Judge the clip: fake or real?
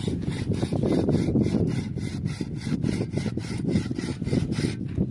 real